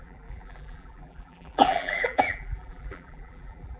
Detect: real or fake fake